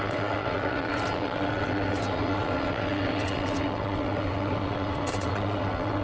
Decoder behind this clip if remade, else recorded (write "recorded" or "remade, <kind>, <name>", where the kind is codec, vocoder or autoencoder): remade, vocoder, WaveNeXt